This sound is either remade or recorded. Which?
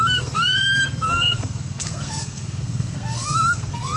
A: remade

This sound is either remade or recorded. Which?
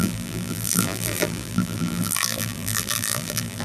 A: remade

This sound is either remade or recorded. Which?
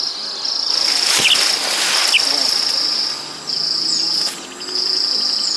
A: recorded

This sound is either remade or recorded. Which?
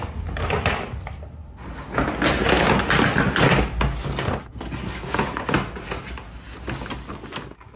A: recorded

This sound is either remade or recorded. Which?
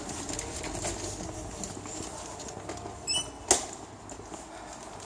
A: recorded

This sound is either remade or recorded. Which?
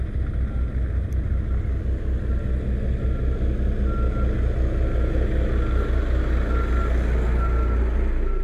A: recorded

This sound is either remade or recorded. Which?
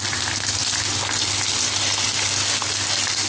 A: recorded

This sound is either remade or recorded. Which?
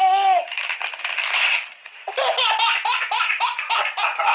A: recorded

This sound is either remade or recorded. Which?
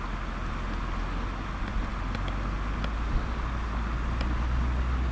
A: recorded